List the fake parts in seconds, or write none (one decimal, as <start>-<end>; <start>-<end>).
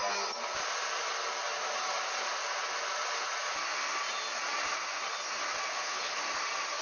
5.7-6.2